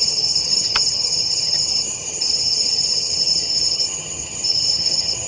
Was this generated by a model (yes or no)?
yes